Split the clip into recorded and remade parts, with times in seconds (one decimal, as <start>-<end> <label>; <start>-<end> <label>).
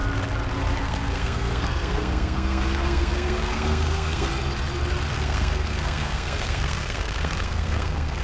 0.0-0.8 recorded; 0.8-4.3 remade; 4.3-5.1 recorded; 5.1-8.2 remade